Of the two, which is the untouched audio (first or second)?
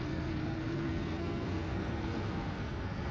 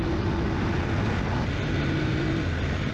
second